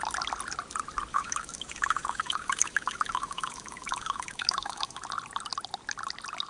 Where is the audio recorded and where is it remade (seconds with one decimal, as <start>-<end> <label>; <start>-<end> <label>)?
0.0-1.1 recorded; 1.1-5.0 remade; 5.0-6.5 recorded